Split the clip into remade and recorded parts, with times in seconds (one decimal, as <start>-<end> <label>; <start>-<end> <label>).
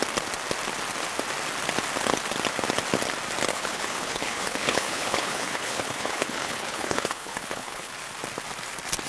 0.0-3.5 recorded; 3.5-7.9 remade; 7.9-9.1 recorded